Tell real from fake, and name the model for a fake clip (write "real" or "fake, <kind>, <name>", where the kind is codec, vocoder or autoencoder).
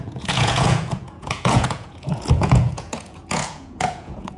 fake, vocoder, Vocos